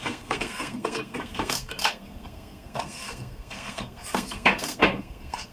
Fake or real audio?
fake